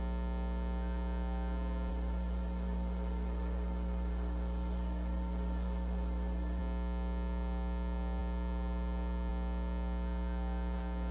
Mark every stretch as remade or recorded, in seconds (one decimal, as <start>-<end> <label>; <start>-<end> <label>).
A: 0.0-1.9 recorded; 1.9-6.6 remade; 6.6-11.1 recorded